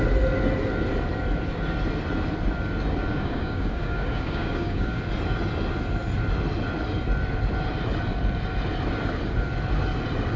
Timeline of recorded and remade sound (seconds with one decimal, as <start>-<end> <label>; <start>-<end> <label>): 0.0-3.1 recorded; 3.1-5.0 remade; 5.0-10.4 recorded